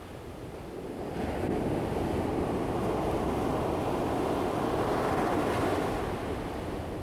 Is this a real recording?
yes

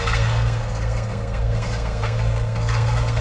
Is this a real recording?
no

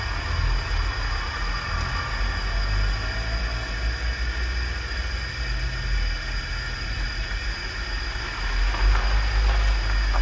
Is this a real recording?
yes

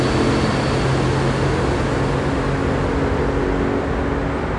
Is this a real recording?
yes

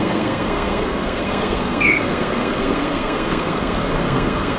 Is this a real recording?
no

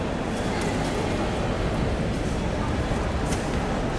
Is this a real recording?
yes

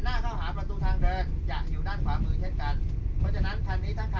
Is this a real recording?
yes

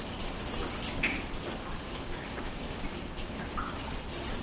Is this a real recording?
yes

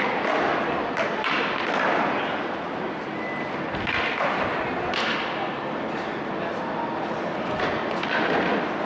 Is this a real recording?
yes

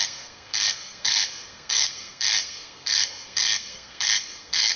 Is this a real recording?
no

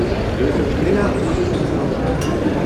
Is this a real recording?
yes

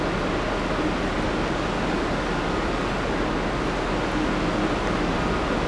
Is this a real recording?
yes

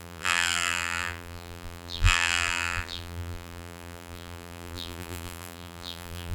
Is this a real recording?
no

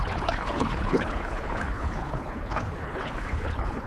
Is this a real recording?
no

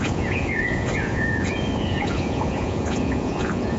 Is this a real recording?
no